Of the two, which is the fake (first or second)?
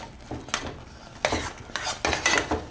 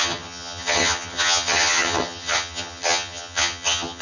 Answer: second